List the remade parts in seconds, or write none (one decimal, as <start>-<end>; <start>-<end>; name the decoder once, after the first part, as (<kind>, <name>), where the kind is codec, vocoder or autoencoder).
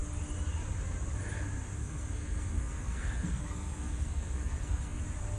1.8-5.0 (codec, SNAC)